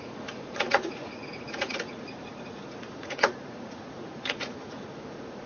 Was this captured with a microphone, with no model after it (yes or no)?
no